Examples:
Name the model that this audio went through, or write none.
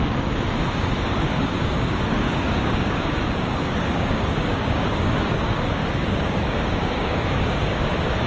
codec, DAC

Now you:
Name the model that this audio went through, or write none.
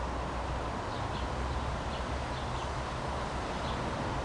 none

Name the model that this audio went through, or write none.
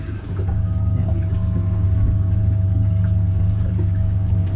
codec, DAC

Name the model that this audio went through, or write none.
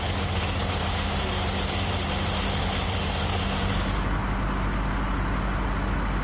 none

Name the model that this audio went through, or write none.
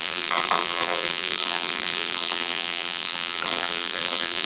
vocoder, BigVGAN v2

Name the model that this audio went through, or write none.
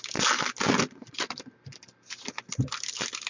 none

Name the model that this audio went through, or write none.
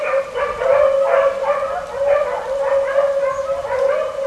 none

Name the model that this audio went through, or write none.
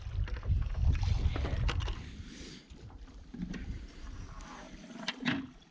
none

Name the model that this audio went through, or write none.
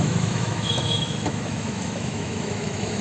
autoencoder, DAC-VAE